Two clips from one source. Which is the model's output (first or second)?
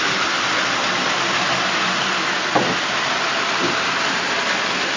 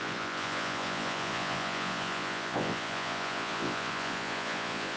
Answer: second